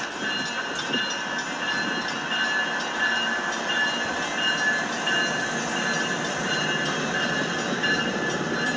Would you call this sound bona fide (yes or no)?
yes